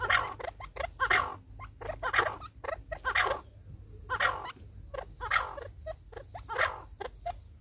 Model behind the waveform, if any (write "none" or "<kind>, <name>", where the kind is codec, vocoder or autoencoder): none